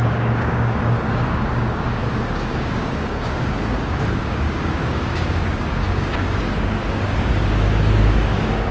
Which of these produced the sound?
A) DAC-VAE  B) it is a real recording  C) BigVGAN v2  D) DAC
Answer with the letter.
D